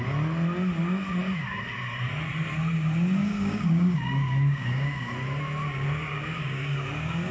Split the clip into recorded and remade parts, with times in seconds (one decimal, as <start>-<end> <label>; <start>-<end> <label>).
0.0-3.2 recorded; 3.2-5.1 remade; 5.1-5.6 recorded; 5.6-7.3 remade